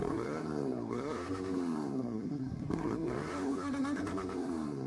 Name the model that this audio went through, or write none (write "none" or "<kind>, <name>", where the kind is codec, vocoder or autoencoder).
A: codec, SNAC